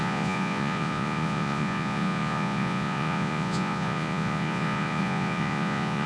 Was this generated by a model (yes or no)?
yes